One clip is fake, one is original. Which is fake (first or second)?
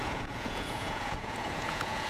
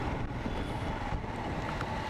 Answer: first